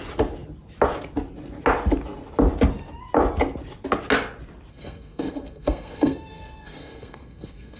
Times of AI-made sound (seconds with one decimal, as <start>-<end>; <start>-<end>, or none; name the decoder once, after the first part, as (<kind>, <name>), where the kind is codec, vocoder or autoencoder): 4.7-7.8 (codec, SNAC)